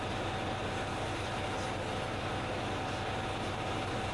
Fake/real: real